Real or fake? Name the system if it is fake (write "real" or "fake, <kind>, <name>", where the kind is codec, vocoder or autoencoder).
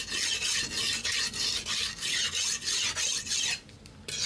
real